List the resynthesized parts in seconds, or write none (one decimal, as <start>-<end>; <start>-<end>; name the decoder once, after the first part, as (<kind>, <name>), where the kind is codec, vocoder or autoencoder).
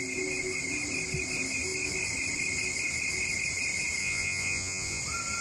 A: 4.0-5.0 (vocoder, Vocos)